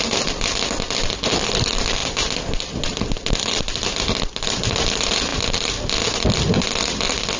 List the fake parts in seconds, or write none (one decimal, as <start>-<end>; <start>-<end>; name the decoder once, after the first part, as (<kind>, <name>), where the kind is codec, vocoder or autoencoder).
none